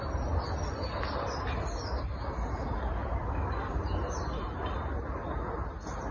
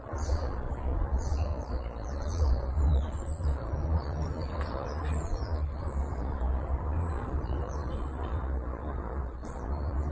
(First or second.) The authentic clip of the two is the first